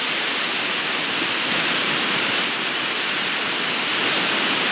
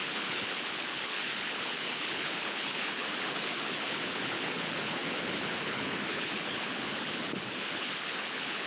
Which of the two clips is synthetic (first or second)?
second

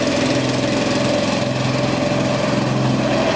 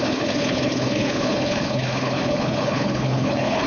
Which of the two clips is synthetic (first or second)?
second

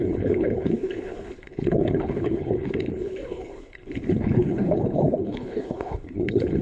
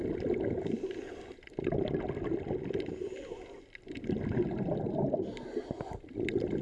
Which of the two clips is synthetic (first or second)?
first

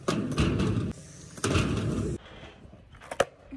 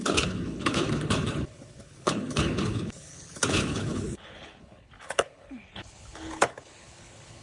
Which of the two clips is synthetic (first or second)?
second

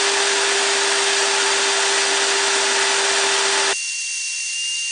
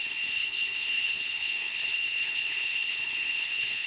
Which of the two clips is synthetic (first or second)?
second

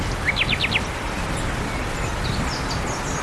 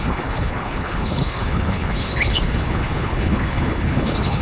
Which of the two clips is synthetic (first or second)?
second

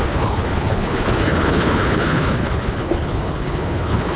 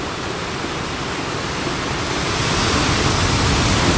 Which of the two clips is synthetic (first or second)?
first